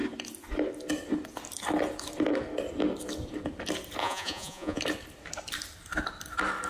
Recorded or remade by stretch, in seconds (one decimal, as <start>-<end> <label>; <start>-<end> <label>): 0.0-4.0 recorded; 4.0-4.8 remade; 4.8-6.7 recorded